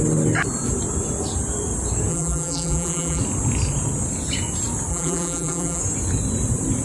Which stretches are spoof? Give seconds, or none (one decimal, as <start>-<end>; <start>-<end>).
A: 2.1-3.2; 4.9-5.8